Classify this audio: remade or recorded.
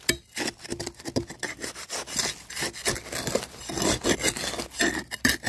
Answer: recorded